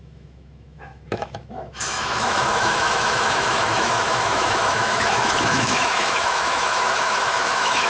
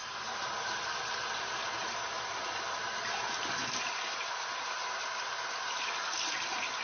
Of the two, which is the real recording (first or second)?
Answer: second